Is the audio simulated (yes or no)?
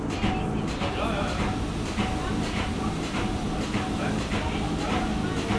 no